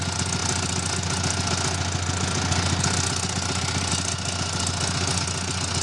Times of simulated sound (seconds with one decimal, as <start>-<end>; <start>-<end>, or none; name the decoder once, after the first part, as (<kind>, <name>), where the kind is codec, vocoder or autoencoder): none